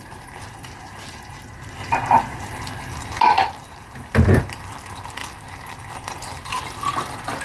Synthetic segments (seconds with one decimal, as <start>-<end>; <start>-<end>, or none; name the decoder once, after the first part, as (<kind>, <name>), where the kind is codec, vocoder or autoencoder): none